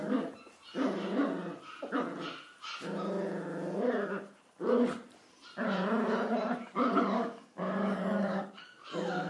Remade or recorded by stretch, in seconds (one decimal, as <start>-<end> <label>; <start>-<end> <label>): 0.0-6.6 recorded; 6.6-8.9 remade; 8.9-9.3 recorded